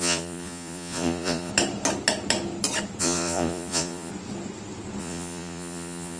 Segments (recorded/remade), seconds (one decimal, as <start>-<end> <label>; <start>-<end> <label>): 0.0-1.5 remade; 1.5-3.0 recorded; 3.0-4.1 remade; 4.1-5.0 recorded; 5.0-6.2 remade